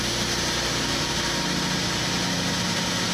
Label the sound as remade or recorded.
recorded